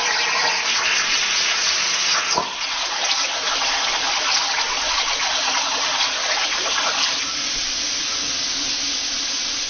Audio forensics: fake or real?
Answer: real